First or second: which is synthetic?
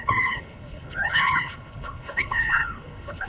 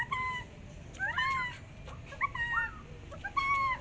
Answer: first